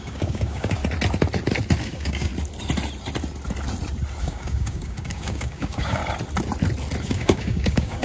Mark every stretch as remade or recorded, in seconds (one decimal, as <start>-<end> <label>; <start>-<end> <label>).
0.0-0.8 remade; 0.8-1.8 recorded; 1.8-2.3 remade; 2.3-4.2 recorded; 4.2-6.0 remade; 6.0-7.0 recorded; 7.0-8.0 remade